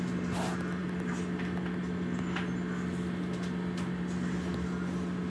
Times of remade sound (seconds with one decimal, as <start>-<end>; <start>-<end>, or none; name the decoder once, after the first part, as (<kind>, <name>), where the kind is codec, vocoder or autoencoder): none